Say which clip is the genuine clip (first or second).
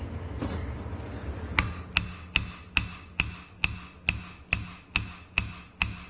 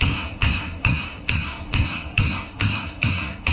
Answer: first